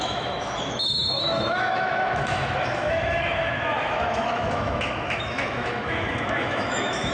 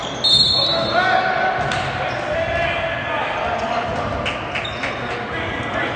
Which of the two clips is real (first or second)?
second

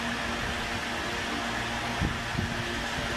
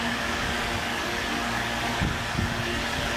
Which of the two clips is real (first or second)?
first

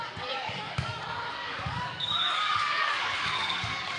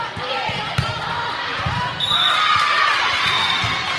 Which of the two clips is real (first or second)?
second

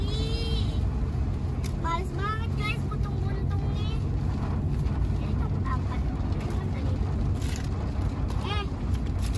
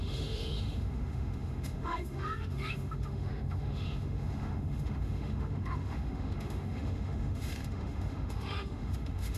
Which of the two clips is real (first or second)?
first